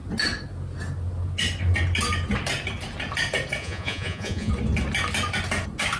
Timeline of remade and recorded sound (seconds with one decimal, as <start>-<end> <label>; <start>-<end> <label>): 0.0-3.6 recorded; 3.6-4.5 remade; 4.5-6.0 recorded

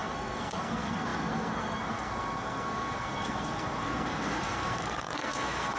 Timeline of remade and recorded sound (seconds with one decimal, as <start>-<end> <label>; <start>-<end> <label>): 0.0-5.8 remade

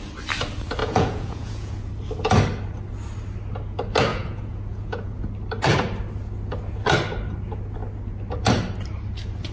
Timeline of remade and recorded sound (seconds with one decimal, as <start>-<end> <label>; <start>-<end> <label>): 0.0-0.8 recorded; 0.8-1.9 remade; 1.9-4.1 recorded; 4.1-5.2 remade; 5.2-9.5 recorded

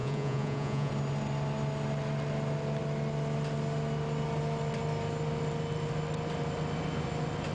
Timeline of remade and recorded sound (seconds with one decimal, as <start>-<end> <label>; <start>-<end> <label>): 0.0-0.9 remade; 0.9-7.5 recorded

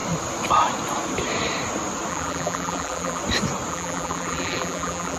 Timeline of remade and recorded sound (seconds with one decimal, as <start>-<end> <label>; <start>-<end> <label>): 0.0-2.1 recorded; 2.1-3.2 remade; 3.2-3.7 recorded; 3.7-5.2 remade

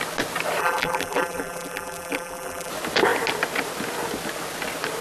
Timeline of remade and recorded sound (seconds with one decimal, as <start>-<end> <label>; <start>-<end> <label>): 0.0-0.6 recorded; 0.6-2.7 remade; 2.7-5.0 recorded